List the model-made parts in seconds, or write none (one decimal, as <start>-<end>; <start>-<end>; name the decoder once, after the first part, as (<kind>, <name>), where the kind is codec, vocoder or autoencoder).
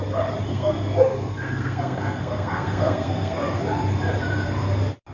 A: 0.5-3.6 (codec, SNAC)